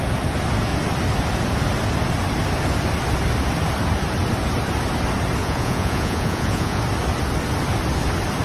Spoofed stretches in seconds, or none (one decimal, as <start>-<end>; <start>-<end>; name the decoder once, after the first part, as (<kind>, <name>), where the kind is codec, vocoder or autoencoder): 5.4-6.8 (vocoder, Vocos)